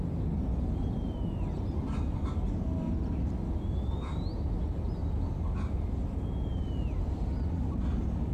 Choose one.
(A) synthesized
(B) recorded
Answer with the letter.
B